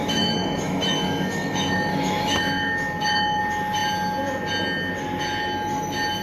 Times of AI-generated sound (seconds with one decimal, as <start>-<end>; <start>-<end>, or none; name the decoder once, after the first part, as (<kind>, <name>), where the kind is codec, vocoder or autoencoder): 0.0-3.4 (autoencoder, DAC-VAE)